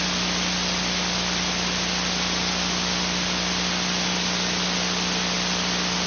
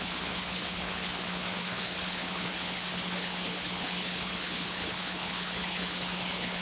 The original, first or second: first